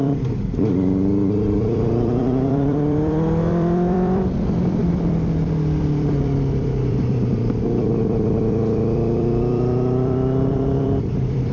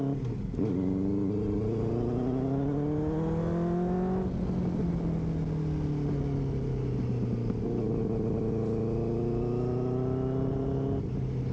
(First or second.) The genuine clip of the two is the second